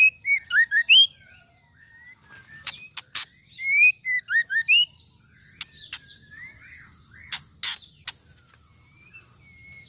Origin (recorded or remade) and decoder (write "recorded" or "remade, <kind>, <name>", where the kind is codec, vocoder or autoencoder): recorded